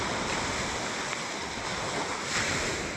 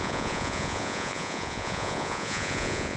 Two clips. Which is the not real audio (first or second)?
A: second